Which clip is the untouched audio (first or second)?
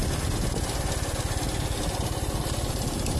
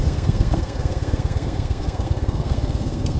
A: first